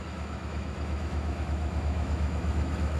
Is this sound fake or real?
fake